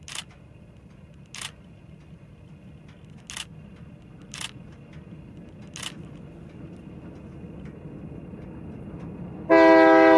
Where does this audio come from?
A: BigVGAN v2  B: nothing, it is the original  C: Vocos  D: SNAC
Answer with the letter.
B